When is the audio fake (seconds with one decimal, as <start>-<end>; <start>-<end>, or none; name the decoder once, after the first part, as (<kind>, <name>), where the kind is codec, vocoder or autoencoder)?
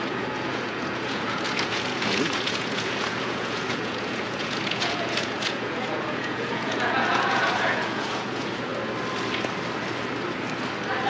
0.0-8.7 (vocoder, Vocos)